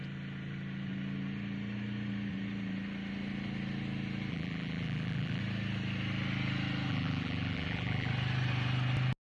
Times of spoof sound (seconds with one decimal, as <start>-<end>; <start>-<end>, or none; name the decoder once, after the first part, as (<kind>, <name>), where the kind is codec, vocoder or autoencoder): 4.3-5.4 (vocoder, BigVGAN v2); 6.9-8.1